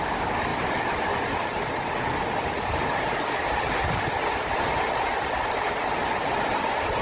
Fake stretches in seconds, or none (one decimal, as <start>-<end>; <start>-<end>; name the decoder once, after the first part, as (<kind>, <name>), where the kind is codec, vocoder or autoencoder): 3.4-5.1 (vocoder, BigVGAN v2)